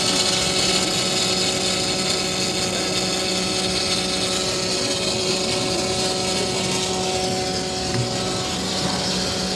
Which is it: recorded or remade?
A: recorded